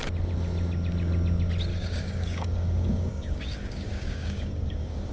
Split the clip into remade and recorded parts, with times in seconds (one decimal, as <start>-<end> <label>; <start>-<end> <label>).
0.0-1.7 recorded; 1.7-5.1 remade